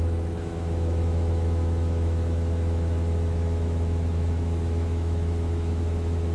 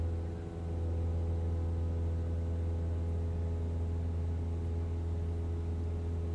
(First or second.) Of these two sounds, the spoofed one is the first